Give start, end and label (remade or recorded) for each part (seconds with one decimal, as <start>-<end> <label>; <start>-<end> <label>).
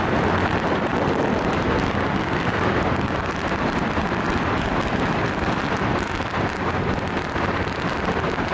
0.0-8.5 recorded